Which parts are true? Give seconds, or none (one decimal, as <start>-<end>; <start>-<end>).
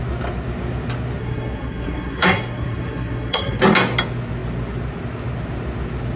0.0-1.2; 3.6-6.2